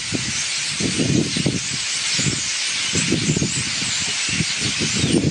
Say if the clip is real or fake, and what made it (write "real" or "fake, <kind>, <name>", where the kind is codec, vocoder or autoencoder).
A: real